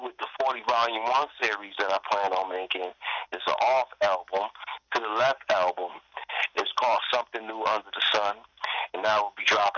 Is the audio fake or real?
real